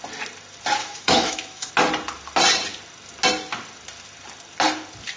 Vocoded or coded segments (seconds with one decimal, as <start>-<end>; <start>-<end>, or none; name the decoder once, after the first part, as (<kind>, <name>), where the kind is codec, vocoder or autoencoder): 0.8-1.7 (autoencoder, DAC-VAE)